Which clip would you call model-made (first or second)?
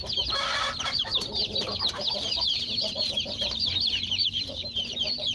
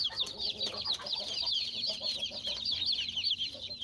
first